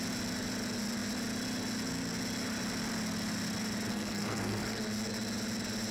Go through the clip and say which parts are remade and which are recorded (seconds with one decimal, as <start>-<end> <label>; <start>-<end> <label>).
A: 0.0-3.9 recorded; 3.9-4.8 remade; 4.8-5.9 recorded